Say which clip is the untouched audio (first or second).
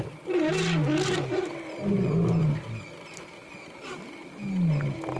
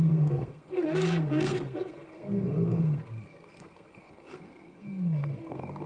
first